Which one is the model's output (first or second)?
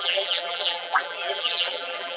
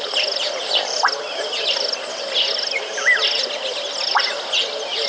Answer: first